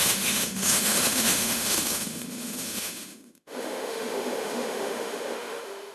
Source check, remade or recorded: remade